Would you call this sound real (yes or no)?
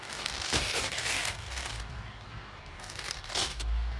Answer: no